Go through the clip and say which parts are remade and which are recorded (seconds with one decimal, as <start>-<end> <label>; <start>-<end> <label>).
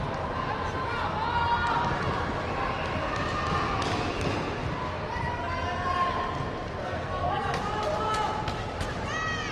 0.0-6.8 recorded; 6.8-7.6 remade; 7.6-9.5 recorded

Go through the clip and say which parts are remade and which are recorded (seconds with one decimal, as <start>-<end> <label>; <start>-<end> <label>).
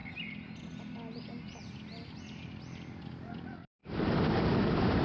0.0-5.0 recorded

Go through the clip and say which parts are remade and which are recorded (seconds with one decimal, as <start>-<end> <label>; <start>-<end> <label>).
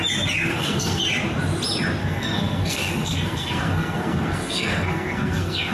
0.0-0.5 recorded; 0.5-1.0 remade; 1.0-2.0 recorded; 2.0-5.7 remade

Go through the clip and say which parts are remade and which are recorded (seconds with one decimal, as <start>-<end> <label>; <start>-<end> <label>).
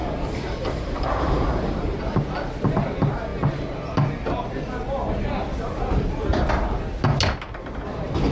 0.0-2.0 remade; 2.0-8.3 recorded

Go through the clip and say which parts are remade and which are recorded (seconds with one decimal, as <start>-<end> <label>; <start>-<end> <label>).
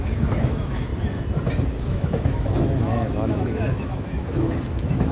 0.0-0.9 remade; 0.9-1.8 recorded; 1.8-5.1 remade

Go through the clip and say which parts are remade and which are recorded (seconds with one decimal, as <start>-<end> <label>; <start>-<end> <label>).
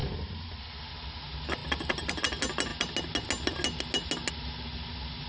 0.0-0.6 remade; 0.6-1.6 recorded; 1.6-2.2 remade; 2.2-5.3 recorded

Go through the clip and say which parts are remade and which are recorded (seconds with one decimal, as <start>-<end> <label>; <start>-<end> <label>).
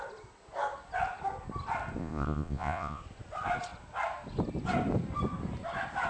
0.0-2.0 recorded; 2.0-3.0 remade; 3.0-6.1 recorded